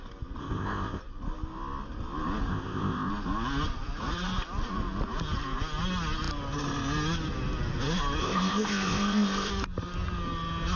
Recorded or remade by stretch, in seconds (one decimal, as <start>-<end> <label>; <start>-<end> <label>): 0.0-0.4 recorded; 0.4-1.0 remade; 1.0-2.5 recorded; 2.5-3.1 remade; 3.1-8.2 recorded; 8.2-9.5 remade; 9.5-10.8 recorded